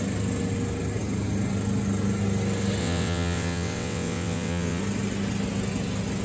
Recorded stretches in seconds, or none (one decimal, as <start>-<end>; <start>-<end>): 0.0-2.8; 4.8-6.2